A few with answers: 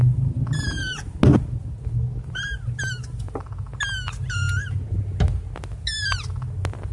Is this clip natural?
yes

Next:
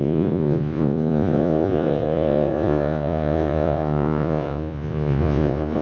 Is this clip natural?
no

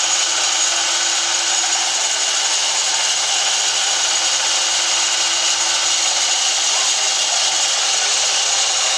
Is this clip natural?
yes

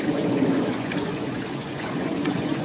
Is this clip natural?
no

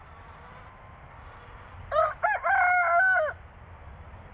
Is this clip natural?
yes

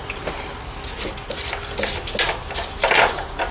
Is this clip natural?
yes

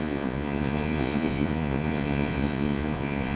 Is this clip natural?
no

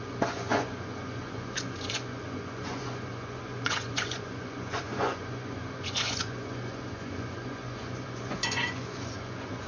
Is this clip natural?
no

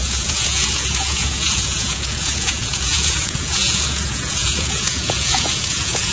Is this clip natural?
no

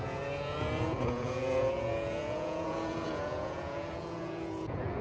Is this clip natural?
no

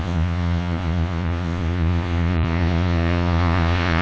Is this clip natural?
no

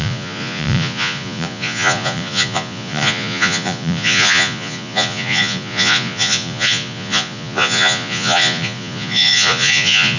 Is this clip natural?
no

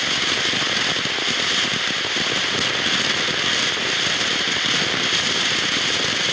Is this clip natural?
yes